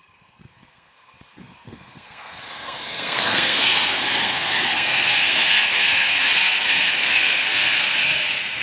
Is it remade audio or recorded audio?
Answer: remade